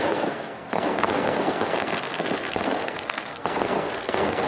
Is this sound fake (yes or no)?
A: yes